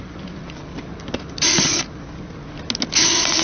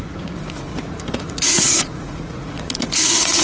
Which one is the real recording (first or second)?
first